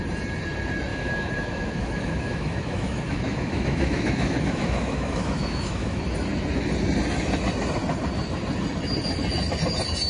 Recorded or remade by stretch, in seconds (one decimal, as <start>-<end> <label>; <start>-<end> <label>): 0.0-0.9 recorded; 0.9-6.0 remade; 6.0-10.1 recorded